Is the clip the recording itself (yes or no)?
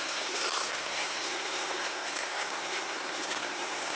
no